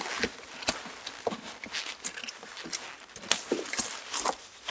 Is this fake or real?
real